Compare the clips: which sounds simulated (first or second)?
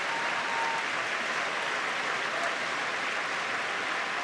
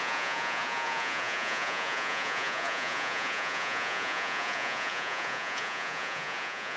second